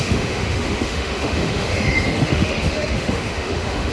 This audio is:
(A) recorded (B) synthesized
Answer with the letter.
B